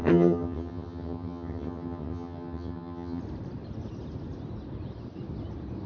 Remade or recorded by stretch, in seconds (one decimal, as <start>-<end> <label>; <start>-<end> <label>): 0.0-3.2 remade; 3.2-5.9 recorded